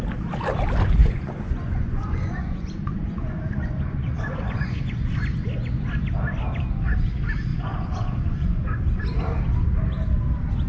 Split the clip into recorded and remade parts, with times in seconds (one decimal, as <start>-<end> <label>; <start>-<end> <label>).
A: 0.0-1.0 recorded; 1.0-5.1 remade; 5.1-7.5 recorded; 7.5-9.0 remade; 9.0-10.7 recorded